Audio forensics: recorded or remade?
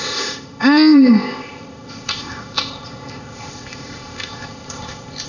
remade